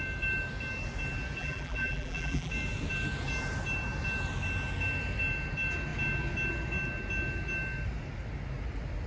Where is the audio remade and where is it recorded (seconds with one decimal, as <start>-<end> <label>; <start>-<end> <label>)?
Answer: 0.0-1.4 recorded; 1.4-2.5 remade; 2.5-9.1 recorded